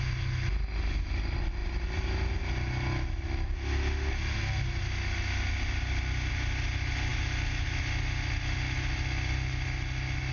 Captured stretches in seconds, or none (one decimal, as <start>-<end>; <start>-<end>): 0.0-10.3